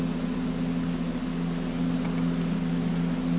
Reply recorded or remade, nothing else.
recorded